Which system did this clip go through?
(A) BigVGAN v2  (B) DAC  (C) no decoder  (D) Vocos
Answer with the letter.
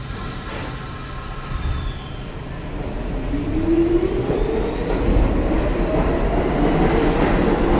C